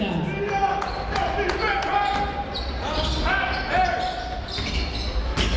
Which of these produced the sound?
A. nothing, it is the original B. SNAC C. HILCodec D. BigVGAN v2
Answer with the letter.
A